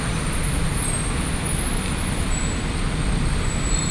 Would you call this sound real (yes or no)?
yes